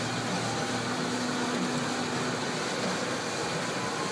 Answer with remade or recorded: recorded